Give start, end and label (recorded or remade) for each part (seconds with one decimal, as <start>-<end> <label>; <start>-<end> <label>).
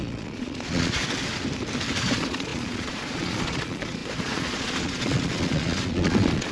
0.0-1.0 remade; 1.0-2.0 recorded; 2.0-6.5 remade